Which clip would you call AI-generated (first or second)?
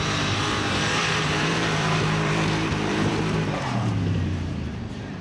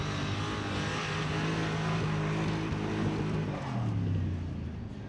first